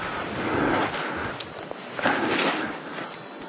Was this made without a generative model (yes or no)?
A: yes